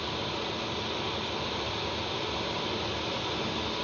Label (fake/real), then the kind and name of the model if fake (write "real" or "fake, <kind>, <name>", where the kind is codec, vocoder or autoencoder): real